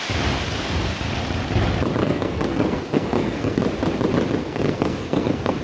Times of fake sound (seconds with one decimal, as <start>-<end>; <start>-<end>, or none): 2.0-3.6; 4.4-5.6